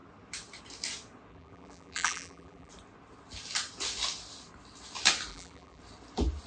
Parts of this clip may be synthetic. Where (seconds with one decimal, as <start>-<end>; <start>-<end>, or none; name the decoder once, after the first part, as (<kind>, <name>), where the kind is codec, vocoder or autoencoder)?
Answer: 1.3-2.7 (vocoder, BigVGAN v2); 5.3-5.8